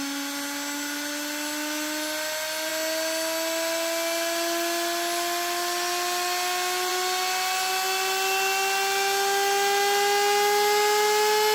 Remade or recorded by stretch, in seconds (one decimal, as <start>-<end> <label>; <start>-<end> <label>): 0.0-11.5 recorded